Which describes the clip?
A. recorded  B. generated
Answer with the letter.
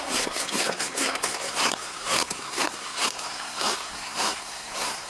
B